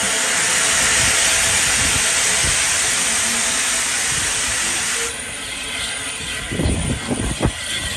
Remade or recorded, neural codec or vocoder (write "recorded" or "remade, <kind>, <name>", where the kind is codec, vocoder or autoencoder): recorded